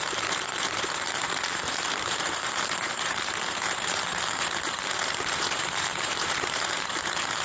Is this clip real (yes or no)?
no